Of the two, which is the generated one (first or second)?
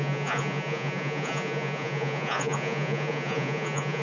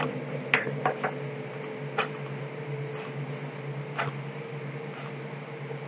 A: first